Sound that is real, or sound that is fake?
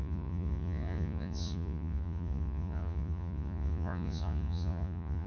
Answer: fake